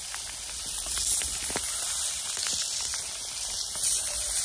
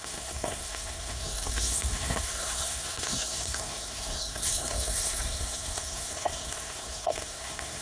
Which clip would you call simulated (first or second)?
second